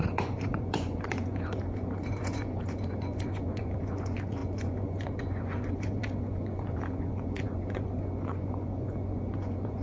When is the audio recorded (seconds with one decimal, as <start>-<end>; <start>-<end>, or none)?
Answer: none